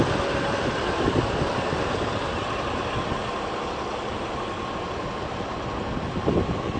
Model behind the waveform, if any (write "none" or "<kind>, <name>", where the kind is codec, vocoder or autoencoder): none